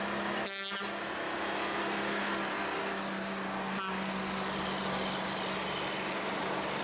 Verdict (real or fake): real